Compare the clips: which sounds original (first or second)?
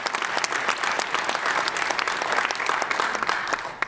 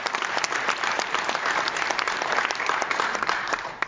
first